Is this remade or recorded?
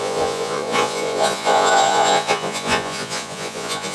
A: remade